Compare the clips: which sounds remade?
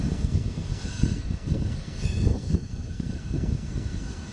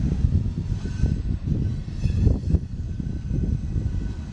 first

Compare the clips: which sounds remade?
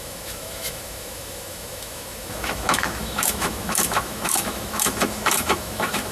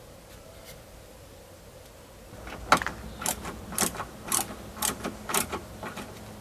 first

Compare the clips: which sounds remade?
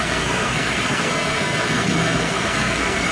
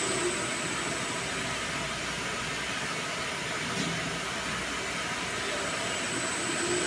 first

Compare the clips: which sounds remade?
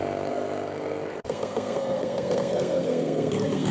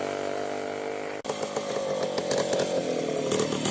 first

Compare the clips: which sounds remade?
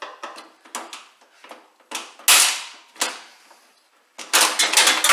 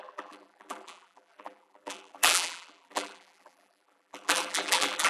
second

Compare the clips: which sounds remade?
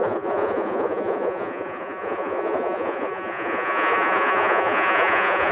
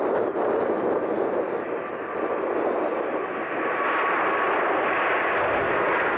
first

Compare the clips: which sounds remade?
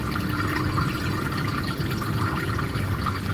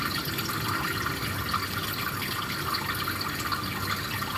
first